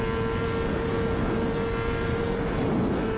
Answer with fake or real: real